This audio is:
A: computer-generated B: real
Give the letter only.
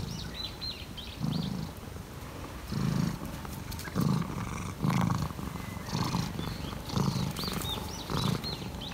A